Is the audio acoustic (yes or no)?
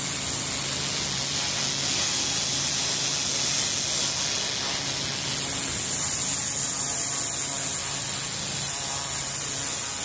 yes